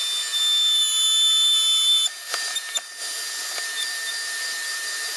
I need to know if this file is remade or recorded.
recorded